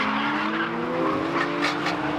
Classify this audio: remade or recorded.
recorded